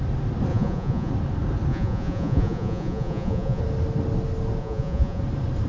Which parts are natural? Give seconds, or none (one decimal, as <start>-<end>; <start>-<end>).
0.0-0.5; 1.1-1.7; 3.6-4.6; 5.2-5.7